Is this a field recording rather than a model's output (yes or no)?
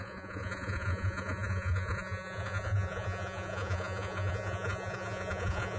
no